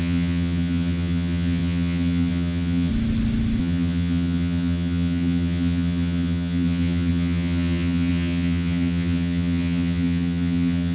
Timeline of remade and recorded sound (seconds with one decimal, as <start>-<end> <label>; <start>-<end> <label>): 0.0-2.9 remade; 2.9-3.6 recorded; 3.6-10.9 remade